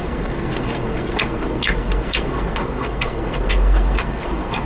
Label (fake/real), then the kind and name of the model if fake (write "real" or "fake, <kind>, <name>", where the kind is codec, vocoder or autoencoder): fake, codec, SNAC